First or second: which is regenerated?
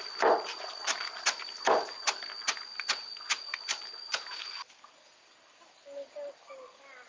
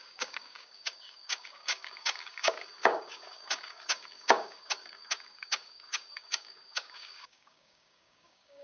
second